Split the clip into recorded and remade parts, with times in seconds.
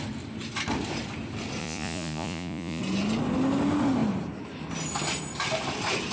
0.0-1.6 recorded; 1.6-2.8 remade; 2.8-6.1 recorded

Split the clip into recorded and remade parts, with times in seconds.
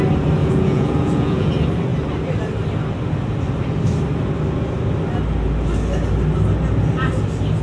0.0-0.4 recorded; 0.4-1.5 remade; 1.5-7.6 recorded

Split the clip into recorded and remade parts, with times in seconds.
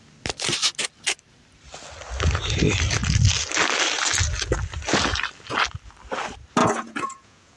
0.0-6.6 recorded; 6.6-7.6 remade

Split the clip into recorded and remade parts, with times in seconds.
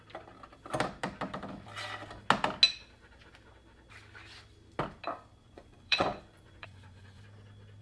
0.0-5.4 recorded; 5.4-7.2 remade; 7.2-7.8 recorded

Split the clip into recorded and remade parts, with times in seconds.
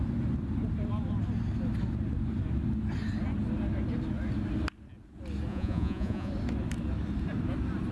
0.0-5.5 recorded; 5.5-6.3 remade; 6.3-7.9 recorded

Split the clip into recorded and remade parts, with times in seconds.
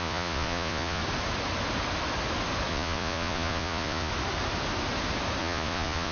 0.0-1.0 remade; 1.0-2.7 recorded; 2.7-4.1 remade; 4.1-5.4 recorded; 5.4-6.1 remade